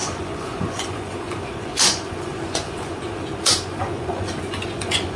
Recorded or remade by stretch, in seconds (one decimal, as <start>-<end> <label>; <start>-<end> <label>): 0.0-5.2 remade